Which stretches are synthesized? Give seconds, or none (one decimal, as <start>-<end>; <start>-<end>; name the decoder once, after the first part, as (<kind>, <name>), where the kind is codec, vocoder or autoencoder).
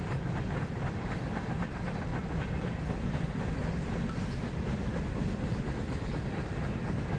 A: none